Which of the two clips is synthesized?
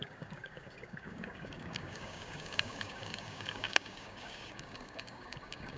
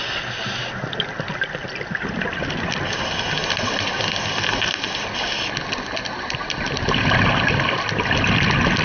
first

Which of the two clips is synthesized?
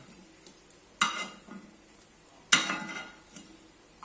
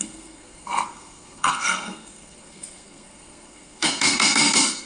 second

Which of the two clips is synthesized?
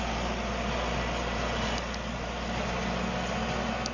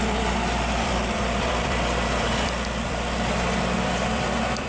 second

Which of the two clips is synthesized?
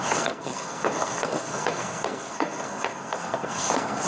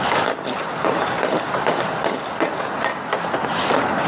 first